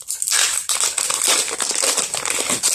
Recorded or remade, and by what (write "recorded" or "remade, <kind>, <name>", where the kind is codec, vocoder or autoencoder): recorded